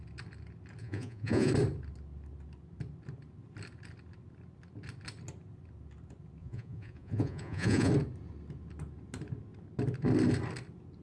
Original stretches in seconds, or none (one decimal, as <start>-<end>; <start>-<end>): 0.0-0.8; 1.5-6.4; 7.9-11.0